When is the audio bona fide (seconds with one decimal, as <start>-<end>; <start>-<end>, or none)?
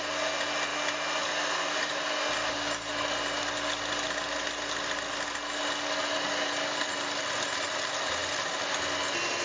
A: 0.0-9.4